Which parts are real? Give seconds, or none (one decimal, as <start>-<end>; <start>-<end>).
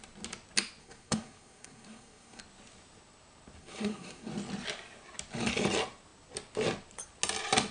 0.0-0.8; 2.4-3.6; 4.3-7.7